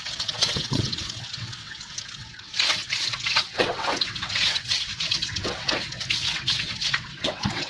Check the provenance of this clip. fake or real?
fake